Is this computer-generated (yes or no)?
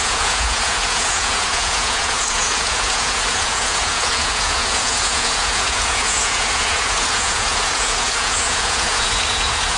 yes